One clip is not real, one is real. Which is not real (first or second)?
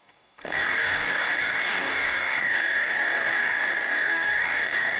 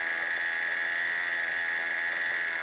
first